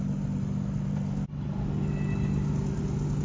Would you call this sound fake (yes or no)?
no